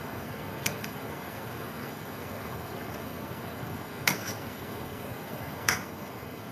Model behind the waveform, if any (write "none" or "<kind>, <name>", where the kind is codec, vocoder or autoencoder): codec, SNAC